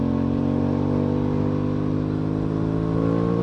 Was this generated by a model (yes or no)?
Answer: no